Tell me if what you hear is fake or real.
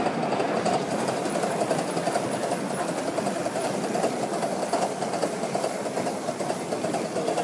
fake